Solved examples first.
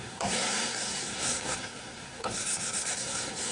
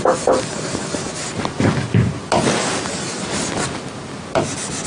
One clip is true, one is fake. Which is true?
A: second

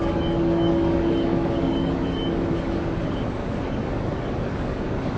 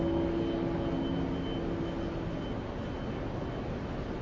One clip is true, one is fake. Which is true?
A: second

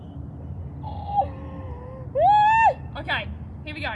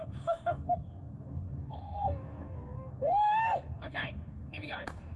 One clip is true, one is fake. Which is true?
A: first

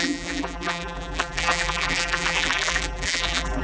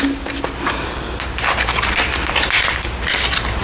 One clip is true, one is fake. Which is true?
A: second